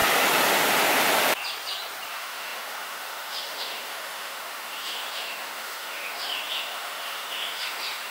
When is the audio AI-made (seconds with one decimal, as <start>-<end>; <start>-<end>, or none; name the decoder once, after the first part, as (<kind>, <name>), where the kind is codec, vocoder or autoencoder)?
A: 2.1-8.1 (autoencoder, DAC-VAE)